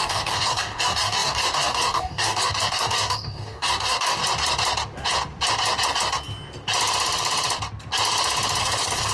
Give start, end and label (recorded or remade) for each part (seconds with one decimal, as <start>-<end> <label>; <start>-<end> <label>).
0.0-4.2 remade; 4.2-8.6 recorded; 8.6-9.1 remade